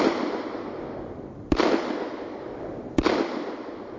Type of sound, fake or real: real